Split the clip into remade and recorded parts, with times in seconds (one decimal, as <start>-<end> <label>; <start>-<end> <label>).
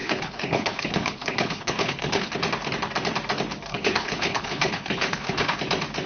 0.0-2.3 remade; 2.3-3.7 recorded; 3.7-5.6 remade; 5.6-6.1 recorded